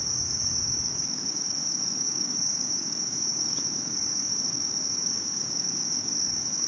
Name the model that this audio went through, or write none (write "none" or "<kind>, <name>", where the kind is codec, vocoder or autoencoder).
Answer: codec, DAC